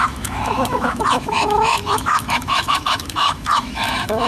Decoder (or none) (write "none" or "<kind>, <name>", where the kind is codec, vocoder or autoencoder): autoencoder, DAC-VAE